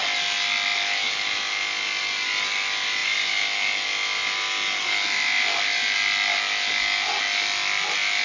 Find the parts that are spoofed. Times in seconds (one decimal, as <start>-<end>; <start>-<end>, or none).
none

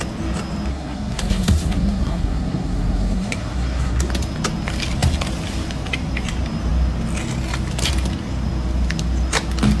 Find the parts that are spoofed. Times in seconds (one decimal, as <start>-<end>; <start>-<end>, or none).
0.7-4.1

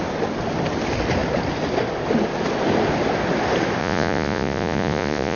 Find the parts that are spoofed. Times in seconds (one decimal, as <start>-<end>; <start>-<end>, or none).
3.8-5.4

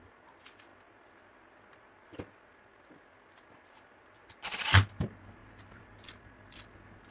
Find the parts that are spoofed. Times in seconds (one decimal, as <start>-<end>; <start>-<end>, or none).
5.4-6.2

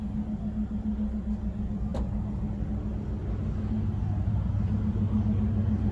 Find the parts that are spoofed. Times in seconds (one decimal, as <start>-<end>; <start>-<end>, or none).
none

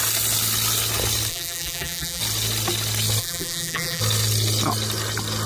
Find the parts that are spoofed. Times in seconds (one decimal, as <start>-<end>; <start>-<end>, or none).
1.3-2.2; 3.2-4.0